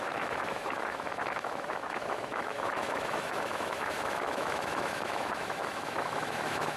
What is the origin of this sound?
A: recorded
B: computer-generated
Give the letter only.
B